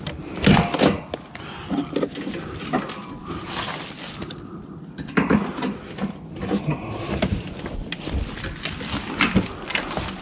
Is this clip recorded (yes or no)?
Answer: yes